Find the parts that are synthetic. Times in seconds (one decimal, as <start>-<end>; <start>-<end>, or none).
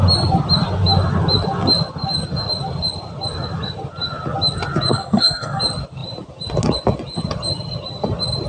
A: 4.9-5.6